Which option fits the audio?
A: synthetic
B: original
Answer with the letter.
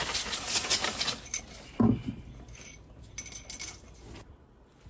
B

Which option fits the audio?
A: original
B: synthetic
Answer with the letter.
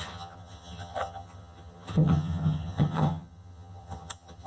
B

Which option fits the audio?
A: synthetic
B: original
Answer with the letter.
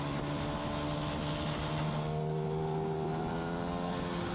B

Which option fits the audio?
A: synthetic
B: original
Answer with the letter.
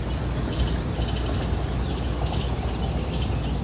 B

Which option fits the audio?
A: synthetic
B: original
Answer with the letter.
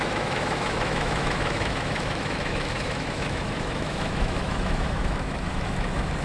A